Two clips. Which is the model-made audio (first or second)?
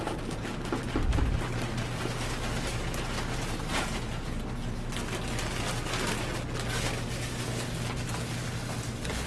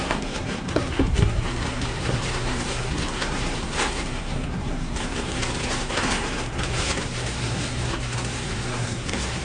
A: second